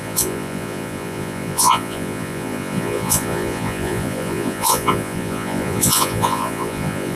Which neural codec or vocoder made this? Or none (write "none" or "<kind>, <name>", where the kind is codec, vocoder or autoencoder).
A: vocoder, Vocos